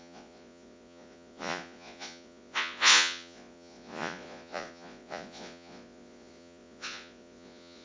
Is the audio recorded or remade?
remade